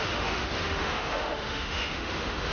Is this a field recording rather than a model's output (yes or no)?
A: no